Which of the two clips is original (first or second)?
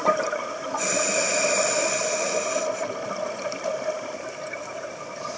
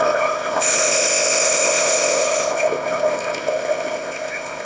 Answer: first